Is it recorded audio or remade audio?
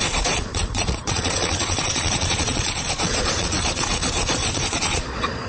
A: remade